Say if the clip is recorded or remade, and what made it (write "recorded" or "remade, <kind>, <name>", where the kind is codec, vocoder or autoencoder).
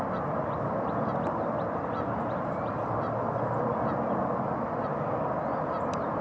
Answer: recorded